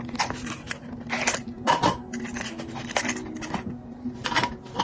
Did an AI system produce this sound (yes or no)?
no